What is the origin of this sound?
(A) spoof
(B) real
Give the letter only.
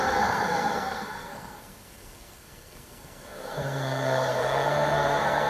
A